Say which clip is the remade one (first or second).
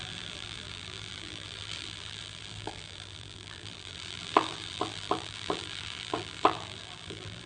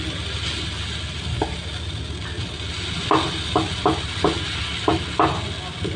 first